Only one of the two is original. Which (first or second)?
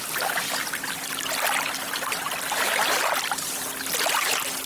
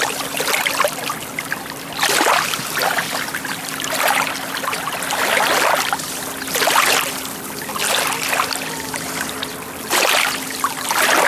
second